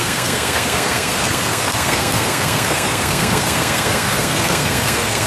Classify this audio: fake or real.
fake